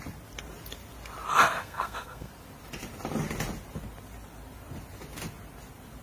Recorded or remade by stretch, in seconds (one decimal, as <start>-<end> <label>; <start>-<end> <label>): 0.0-1.6 recorded; 1.6-2.3 remade; 2.3-6.0 recorded